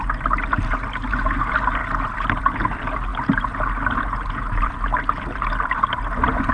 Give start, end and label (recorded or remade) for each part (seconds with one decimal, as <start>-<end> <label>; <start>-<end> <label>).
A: 0.0-6.5 recorded